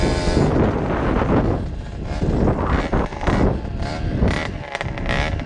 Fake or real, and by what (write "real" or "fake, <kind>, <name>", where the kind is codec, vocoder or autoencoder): real